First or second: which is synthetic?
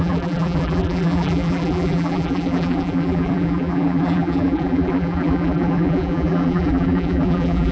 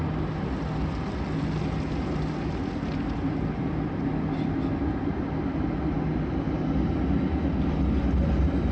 first